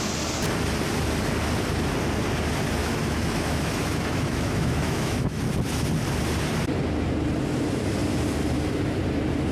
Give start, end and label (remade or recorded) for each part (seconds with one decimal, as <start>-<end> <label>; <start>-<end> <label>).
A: 0.0-2.8 recorded; 2.8-5.4 remade; 5.4-9.5 recorded